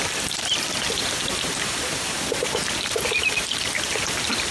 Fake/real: real